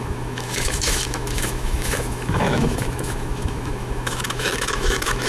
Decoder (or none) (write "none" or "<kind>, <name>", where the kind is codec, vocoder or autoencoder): autoencoder, DAC-VAE